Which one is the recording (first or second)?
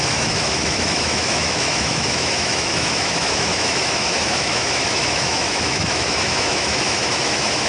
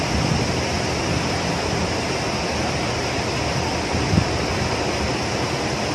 second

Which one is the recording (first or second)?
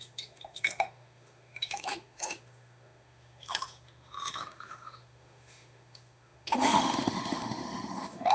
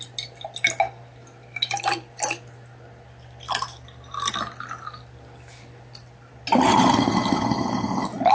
second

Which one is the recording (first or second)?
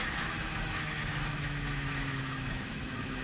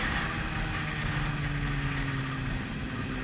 second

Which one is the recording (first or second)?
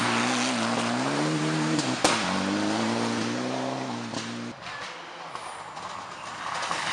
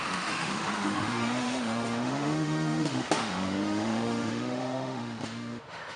first